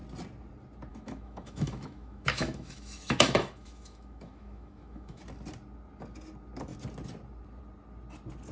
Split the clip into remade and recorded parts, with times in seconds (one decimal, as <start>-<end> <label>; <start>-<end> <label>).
0.0-0.9 recorded; 0.9-5.2 remade; 5.2-8.5 recorded